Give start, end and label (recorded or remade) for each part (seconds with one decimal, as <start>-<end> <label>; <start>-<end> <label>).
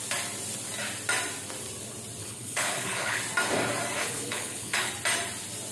0.0-2.2 recorded; 2.2-3.2 remade; 3.2-4.0 recorded; 4.0-4.9 remade; 4.9-5.7 recorded